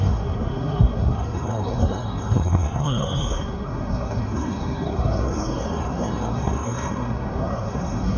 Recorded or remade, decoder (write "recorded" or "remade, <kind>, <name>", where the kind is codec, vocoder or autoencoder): remade, codec, SNAC